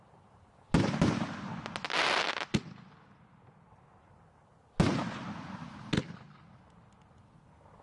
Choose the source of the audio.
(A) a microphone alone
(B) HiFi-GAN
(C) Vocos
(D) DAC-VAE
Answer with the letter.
A